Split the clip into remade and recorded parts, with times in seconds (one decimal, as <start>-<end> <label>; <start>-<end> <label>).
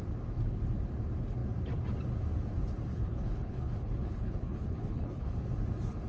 0.0-2.9 recorded; 2.9-5.3 remade; 5.3-6.1 recorded